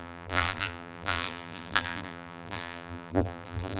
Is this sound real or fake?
fake